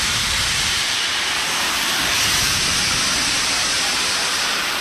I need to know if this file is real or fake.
fake